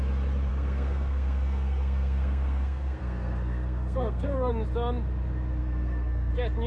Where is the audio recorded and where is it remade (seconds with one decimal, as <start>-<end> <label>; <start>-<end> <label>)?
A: 0.0-0.5 recorded; 0.5-4.5 remade; 4.5-5.6 recorded; 5.6-6.3 remade; 6.3-6.7 recorded